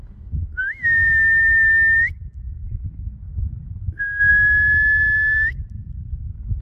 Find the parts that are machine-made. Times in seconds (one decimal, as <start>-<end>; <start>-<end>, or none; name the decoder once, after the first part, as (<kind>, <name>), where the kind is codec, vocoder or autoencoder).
none